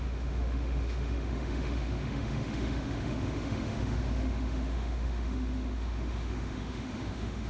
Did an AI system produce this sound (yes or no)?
yes